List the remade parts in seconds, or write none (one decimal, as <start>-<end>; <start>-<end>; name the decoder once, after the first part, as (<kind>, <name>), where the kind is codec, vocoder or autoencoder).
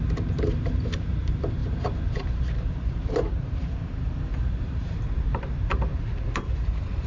0.0-5.9 (vocoder, BigVGAN v2); 6.5-7.1